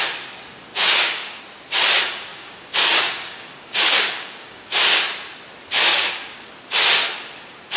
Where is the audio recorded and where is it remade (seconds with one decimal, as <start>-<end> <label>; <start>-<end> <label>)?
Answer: 0.0-0.7 recorded; 0.7-1.4 remade; 1.4-2.3 recorded; 2.3-4.7 remade; 4.7-5.9 recorded; 5.9-6.5 remade; 6.5-7.8 recorded